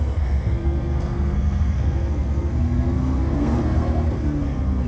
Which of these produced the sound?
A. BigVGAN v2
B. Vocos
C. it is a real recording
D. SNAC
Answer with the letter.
D